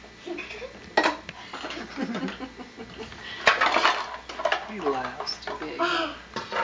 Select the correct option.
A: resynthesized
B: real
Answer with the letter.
B